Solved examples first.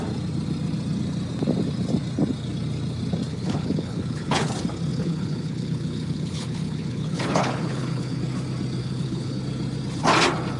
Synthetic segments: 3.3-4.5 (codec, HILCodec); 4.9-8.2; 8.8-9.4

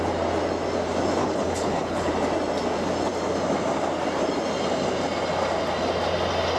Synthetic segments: 1.2-2.1 (codec, HILCodec)

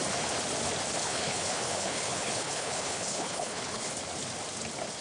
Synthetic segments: 1.0-3.9 (codec, HILCodec)

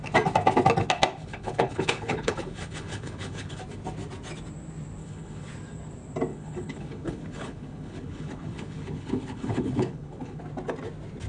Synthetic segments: 1.2-3.6 (codec, HILCodec); 5.0-5.5; 6.3-10.4

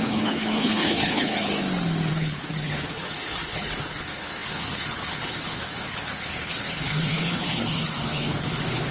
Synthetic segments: 0.0-1.5 (codec, HILCodec); 2.1-8.9

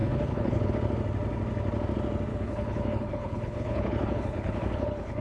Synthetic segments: 0.0-0.7 (codec, HILCodec); 2.3-5.2